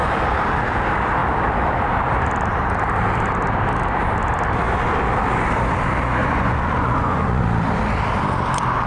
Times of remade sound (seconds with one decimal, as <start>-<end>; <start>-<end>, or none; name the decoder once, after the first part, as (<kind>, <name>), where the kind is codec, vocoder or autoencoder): 6.2-7.4 (vocoder, Vocos)